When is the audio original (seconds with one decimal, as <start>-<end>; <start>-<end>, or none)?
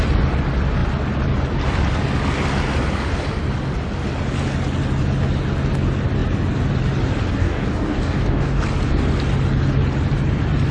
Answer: 0.0-7.4; 8.6-10.7